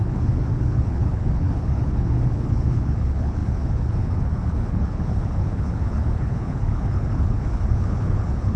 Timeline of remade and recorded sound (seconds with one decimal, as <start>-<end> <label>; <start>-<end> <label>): 0.0-8.6 remade